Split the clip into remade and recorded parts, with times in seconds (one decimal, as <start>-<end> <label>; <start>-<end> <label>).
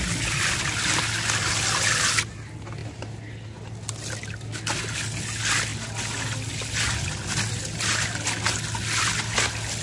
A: 0.0-9.8 recorded